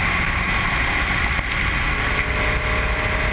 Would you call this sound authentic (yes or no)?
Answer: yes